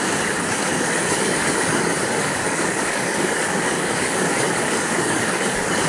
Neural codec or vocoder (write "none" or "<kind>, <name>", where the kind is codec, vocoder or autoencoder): codec, DAC